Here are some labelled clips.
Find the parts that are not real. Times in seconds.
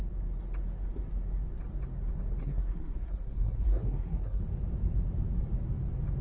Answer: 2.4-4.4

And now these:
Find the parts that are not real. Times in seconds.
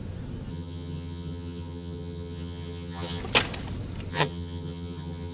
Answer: 0.5-3.2; 4.1-5.3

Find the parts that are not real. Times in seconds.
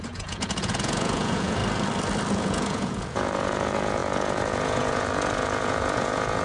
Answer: 0.0-1.6; 2.3-6.4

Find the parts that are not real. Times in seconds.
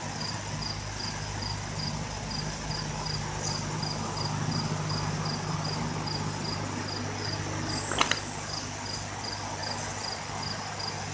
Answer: none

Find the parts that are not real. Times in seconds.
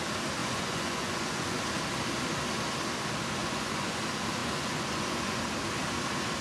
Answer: 0.4-1.6; 3.4-4.0; 4.4-5.4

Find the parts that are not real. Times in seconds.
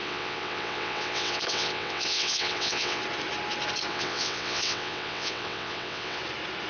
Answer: 0.0-3.0; 3.9-6.2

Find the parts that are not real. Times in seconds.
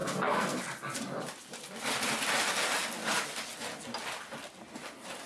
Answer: 0.0-0.6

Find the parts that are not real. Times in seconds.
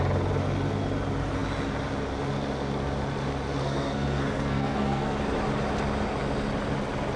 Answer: 3.6-5.2